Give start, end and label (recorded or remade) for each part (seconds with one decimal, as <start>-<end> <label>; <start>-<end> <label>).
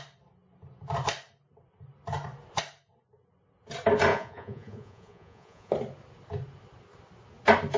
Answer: 0.0-4.1 recorded; 4.1-5.7 remade; 5.7-7.8 recorded